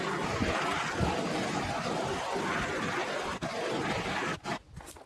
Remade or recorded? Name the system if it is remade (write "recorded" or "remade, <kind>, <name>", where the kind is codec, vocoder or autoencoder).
recorded